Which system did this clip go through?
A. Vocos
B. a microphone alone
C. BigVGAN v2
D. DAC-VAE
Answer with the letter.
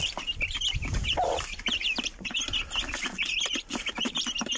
C